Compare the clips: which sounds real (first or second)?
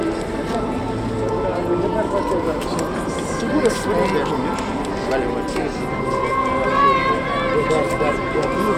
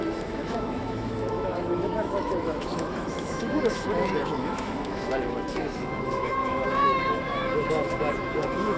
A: first